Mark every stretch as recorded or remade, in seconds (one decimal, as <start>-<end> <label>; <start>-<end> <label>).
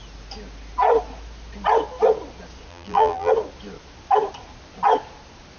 0.0-2.7 recorded; 2.7-3.3 remade; 3.3-5.6 recorded